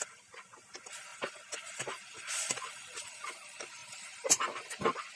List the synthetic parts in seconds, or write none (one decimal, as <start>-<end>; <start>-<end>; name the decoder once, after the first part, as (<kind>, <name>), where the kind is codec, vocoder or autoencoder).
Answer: none